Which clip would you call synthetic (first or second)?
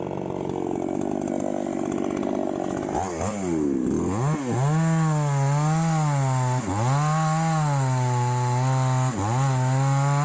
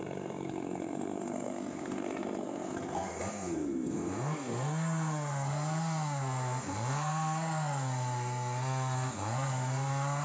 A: second